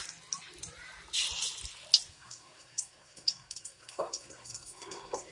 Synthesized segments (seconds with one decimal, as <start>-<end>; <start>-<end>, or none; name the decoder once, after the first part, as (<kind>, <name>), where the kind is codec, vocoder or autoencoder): 2.1-5.3 (codec, SNAC)